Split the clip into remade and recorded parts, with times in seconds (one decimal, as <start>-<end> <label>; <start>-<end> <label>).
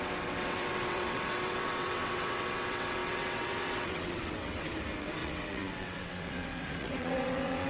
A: 0.0-7.7 remade